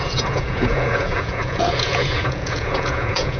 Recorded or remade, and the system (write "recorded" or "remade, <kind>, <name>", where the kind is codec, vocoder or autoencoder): remade, vocoder, Vocos